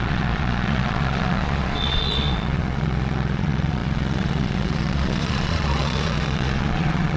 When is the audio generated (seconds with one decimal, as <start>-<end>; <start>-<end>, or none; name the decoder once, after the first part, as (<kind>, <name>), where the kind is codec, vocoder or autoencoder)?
0.0-7.2 (vocoder, Vocos)